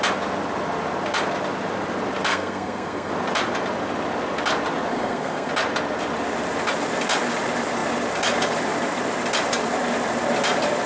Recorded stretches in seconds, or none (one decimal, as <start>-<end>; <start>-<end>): 0.0-2.3; 3.1-4.9; 5.5-10.9